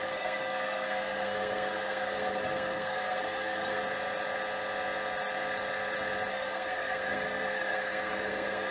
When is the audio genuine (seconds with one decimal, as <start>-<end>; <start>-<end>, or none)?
3.8-6.3

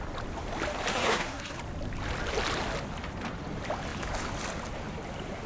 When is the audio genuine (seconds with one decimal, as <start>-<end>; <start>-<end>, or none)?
0.0-0.9; 1.6-5.5

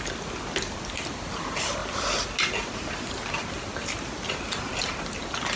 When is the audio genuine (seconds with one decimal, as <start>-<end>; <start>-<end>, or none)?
0.0-5.6